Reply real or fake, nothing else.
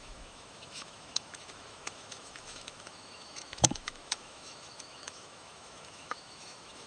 fake